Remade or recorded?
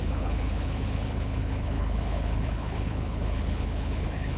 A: remade